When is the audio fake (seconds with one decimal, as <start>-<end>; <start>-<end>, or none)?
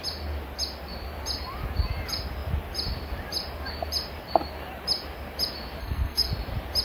5.8-6.3